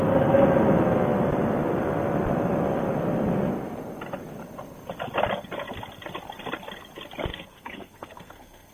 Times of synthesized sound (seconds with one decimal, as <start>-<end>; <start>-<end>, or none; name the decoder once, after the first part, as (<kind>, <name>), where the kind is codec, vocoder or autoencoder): 7.3-8.7 (codec, SNAC)